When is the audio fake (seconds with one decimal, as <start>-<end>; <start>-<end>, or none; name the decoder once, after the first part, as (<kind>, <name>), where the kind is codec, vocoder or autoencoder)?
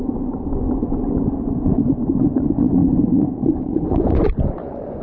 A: 0.0-1.0 (vocoder, Vocos); 1.6-5.0